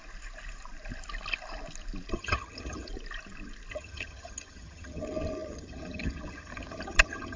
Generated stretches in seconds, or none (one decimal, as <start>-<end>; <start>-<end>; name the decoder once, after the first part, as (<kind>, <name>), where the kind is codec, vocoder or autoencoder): 2.1-2.9 (vocoder, HiFi-GAN); 3.7-7.4